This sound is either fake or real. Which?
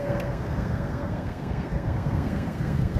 fake